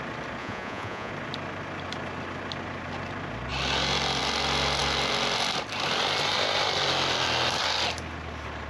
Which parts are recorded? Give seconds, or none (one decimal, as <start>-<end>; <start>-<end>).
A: 0.0-0.4; 1.1-8.7